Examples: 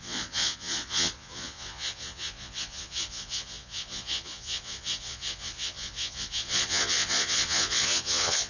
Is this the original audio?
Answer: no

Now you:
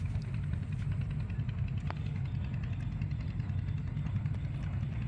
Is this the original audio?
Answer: yes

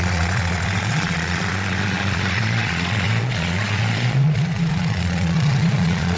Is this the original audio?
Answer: no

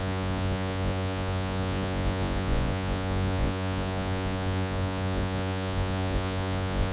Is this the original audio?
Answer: no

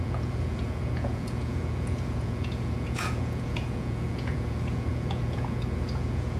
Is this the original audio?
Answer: no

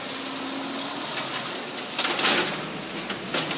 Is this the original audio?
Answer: yes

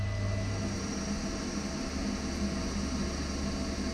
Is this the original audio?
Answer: yes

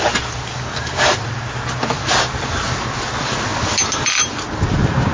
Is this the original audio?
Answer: yes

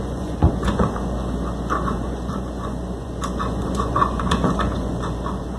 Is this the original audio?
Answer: no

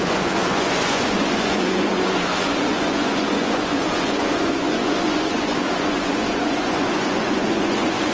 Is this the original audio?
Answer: no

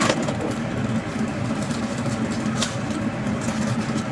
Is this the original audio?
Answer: yes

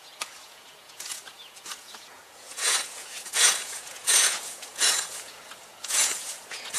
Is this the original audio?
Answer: no